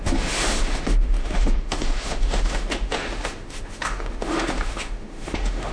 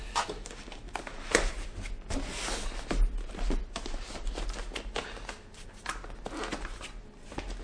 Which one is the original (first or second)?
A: second